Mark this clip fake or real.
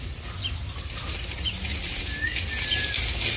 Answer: real